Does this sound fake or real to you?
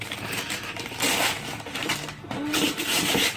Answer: fake